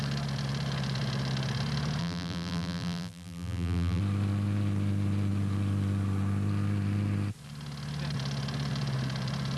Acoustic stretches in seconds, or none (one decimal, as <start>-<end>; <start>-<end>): 0.0-2.0; 4.0-9.6